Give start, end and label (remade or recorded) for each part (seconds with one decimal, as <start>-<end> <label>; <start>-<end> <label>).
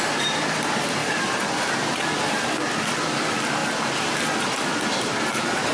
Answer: 0.0-5.7 recorded